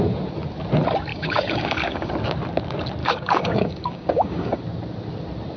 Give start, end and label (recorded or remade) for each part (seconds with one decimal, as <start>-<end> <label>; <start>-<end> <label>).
0.0-1.1 recorded; 1.1-2.1 remade; 2.1-3.0 recorded; 3.0-4.6 remade; 4.6-5.6 recorded